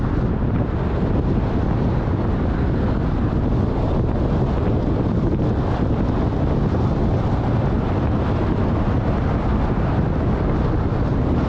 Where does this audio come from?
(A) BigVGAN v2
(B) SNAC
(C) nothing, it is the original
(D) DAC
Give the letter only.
C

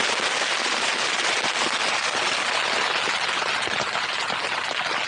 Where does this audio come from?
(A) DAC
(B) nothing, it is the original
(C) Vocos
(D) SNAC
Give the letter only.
B